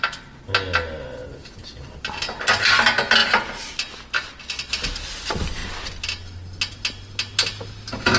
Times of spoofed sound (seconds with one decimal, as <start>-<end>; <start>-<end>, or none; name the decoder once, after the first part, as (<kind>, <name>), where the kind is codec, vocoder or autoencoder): none